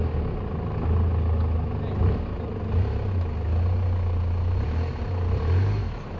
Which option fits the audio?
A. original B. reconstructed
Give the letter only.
A